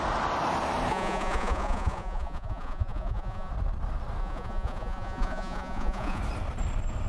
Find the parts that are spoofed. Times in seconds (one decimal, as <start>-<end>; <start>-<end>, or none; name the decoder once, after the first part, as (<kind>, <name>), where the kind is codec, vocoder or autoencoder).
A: 0.9-3.5 (vocoder, Vocos); 4.2-6.2